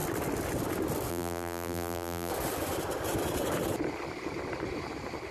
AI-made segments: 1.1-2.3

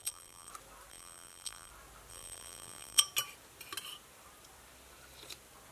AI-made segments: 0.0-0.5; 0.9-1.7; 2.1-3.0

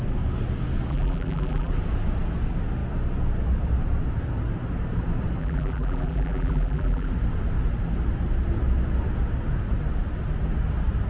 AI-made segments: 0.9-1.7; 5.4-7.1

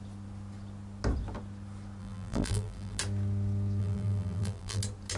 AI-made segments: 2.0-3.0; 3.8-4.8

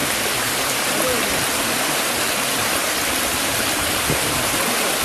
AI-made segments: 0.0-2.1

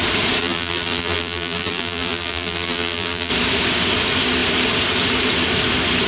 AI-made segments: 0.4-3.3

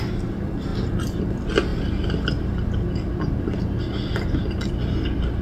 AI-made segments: 0.7-1.2